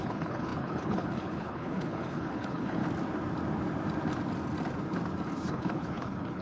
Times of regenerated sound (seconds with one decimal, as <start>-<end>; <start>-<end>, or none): 0.0-2.8; 5.5-6.4